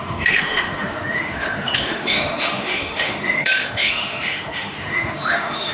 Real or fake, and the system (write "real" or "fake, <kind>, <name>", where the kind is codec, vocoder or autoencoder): fake, autoencoder, DAC-VAE